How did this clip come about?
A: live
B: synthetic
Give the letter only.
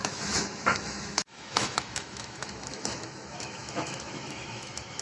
B